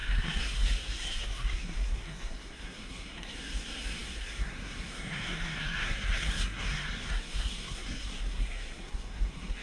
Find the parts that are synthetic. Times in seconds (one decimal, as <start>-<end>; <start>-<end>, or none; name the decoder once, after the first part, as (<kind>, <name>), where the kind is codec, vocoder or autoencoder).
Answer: 0.0-9.6 (codec, SNAC)